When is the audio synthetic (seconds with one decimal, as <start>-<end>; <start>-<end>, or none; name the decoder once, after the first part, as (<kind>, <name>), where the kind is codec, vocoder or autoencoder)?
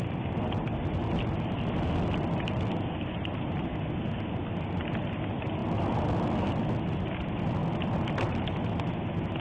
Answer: none